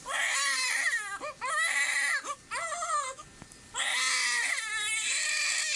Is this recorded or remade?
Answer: recorded